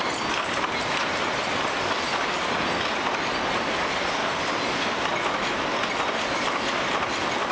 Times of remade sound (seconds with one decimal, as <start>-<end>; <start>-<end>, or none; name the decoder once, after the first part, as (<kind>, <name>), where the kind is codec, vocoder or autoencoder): none

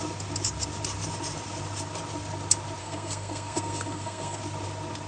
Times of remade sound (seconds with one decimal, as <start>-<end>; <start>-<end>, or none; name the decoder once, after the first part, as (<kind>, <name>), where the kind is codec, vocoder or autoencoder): 2.8-4.4 (codec, SNAC)